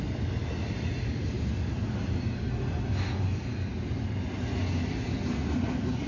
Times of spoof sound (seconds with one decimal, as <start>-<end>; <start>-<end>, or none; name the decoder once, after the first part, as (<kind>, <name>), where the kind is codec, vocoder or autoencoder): none